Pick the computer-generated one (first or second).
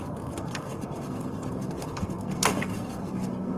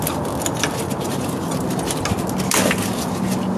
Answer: first